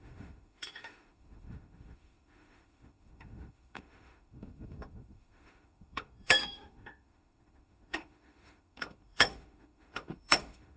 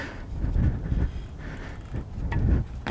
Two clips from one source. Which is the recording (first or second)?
second